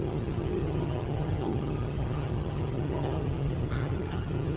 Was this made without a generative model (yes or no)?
no